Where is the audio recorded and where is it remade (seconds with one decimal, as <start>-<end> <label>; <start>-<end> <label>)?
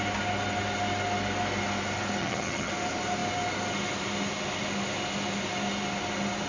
0.0-2.2 recorded; 2.2-2.7 remade; 2.7-6.5 recorded